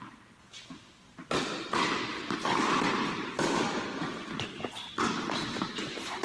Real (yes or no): yes